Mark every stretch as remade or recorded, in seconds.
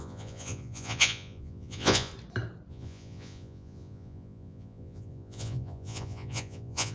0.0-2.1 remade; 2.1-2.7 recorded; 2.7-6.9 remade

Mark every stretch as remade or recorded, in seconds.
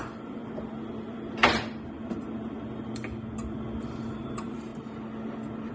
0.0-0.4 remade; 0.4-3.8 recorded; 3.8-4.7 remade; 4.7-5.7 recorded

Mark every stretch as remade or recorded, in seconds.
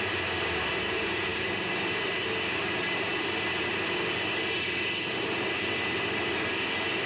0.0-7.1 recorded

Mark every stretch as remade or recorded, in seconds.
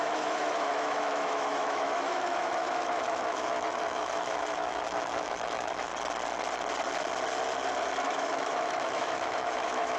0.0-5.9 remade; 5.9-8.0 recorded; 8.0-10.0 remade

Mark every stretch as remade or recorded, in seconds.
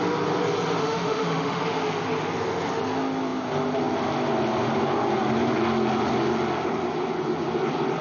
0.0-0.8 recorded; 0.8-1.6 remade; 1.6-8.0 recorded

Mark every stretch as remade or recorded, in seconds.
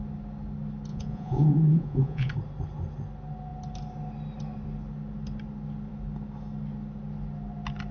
0.0-0.9 recorded; 0.9-2.3 remade; 2.3-7.9 recorded